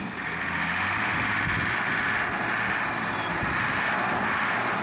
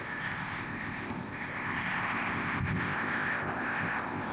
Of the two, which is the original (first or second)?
first